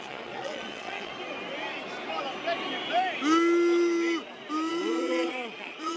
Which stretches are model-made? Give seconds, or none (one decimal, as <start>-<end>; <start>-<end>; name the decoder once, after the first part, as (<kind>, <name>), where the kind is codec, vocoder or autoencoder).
0.0-1.1 (vocoder, Vocos); 4.7-6.0